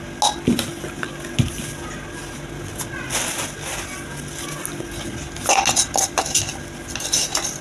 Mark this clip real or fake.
real